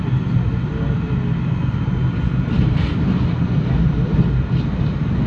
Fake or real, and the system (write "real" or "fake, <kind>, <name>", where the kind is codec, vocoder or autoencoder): real